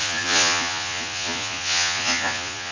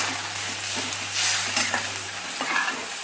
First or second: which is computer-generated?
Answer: first